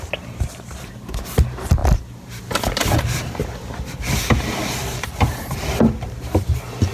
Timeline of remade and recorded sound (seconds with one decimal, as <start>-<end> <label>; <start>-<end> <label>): 0.0-6.9 recorded